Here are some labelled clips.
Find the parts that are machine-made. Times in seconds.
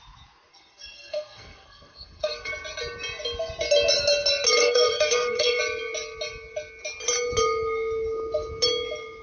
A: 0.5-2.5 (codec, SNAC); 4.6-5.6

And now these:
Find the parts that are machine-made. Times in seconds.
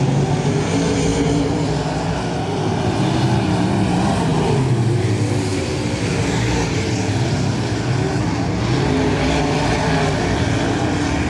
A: none